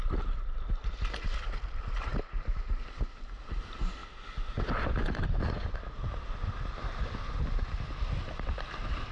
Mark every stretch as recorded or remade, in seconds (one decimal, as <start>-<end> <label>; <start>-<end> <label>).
0.0-9.1 recorded